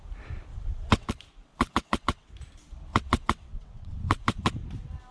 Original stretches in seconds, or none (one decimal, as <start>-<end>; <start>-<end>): 0.0-0.5; 1.1-1.5; 2.3-2.9; 4.5-5.1